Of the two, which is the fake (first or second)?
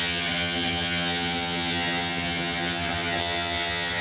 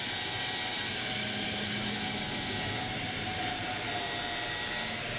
first